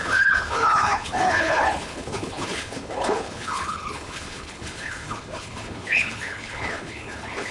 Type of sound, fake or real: fake